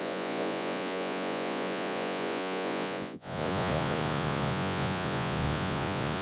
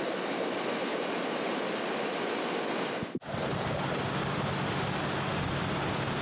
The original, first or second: second